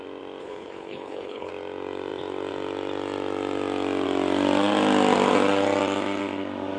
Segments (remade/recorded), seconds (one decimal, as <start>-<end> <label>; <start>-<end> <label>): 0.0-0.4 recorded; 0.4-1.5 remade; 1.5-6.8 recorded